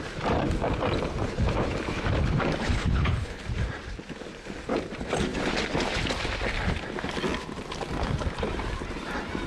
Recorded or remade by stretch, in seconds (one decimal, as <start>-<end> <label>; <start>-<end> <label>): 0.0-2.6 recorded; 2.6-3.4 remade; 3.4-9.5 recorded